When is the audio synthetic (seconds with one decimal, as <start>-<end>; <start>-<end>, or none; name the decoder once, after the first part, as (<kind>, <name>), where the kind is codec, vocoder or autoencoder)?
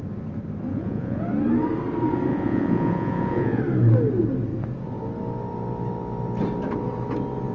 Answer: 0.7-1.2 (vocoder, Vocos); 2.3-3.6